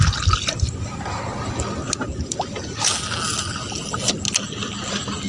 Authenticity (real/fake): real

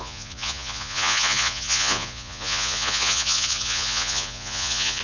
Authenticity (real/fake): fake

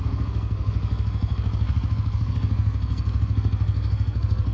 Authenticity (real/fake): fake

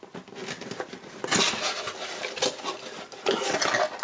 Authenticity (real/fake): real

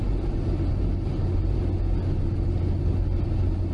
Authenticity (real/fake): real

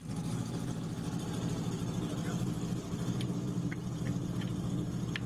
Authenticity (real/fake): real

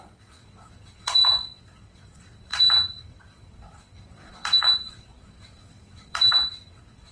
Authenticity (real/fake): fake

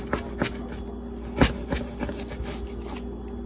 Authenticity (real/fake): real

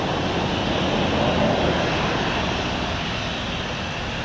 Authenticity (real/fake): real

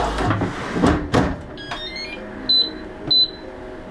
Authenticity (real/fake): real